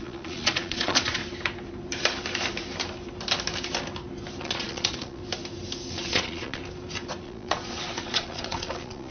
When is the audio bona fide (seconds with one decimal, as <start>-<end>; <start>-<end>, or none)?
1.2-4.4; 5.2-5.9; 6.6-7.2